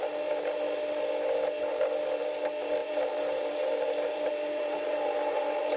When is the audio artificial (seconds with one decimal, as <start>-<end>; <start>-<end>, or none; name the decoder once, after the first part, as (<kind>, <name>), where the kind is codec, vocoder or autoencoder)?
2.8-5.8 (vocoder, BigVGAN v2)